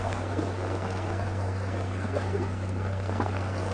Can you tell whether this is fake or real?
fake